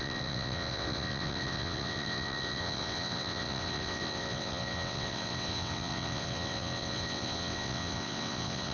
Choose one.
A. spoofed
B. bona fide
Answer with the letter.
A